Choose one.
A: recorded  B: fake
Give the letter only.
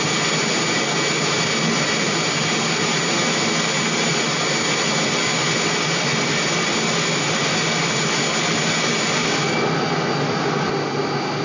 A